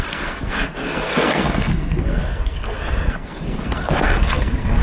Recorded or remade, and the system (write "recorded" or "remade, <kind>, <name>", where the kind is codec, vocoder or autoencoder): remade, codec, SNAC